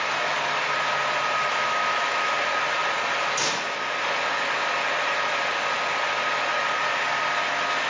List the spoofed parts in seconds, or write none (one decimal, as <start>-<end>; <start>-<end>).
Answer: 1.5-2.3